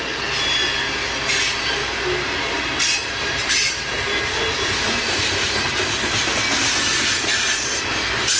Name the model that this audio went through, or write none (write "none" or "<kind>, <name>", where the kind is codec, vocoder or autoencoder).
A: none